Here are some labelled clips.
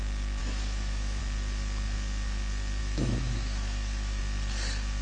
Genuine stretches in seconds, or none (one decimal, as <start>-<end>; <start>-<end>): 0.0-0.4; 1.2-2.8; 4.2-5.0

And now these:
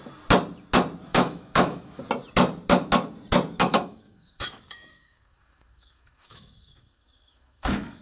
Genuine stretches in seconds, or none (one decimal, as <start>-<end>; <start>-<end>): 0.0-1.1; 2.0-3.7

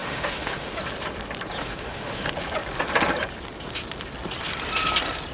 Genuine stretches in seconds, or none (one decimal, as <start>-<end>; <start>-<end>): 0.7-1.6; 2.3-5.3